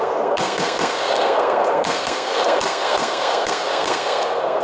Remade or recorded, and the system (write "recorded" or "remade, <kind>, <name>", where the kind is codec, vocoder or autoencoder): remade, codec, SNAC